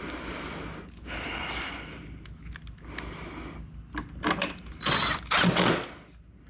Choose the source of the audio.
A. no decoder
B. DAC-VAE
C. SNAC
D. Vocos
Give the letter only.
A